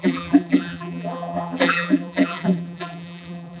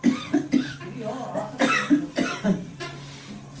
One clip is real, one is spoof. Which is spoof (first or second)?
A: first